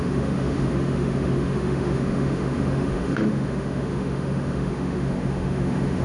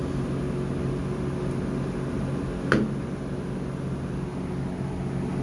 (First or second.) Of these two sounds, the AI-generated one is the first